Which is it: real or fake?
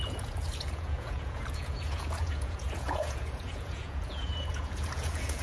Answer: fake